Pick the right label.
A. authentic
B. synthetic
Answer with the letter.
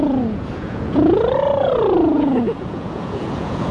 B